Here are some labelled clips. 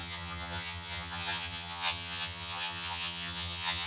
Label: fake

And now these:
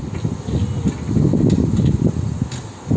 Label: real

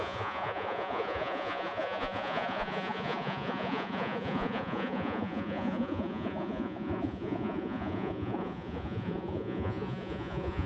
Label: fake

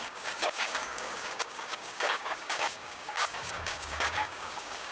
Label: fake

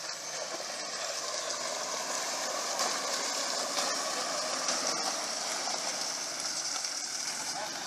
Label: real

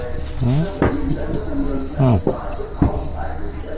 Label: real